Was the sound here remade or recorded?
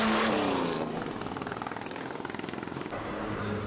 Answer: recorded